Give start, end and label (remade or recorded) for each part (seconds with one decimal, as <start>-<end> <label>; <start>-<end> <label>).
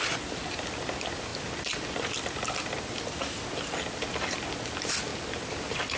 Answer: 0.0-6.0 recorded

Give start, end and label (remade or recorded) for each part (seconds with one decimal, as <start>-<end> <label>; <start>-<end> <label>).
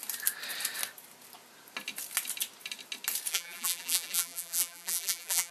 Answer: 0.0-3.3 recorded; 3.3-5.5 remade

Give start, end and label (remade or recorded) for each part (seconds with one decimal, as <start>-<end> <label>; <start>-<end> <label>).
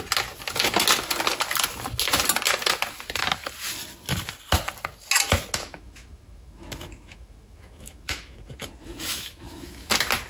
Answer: 0.0-5.6 recorded; 5.6-9.9 remade; 9.9-10.3 recorded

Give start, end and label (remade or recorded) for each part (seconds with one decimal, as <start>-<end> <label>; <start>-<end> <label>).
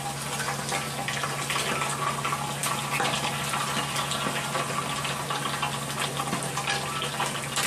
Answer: 0.0-7.7 recorded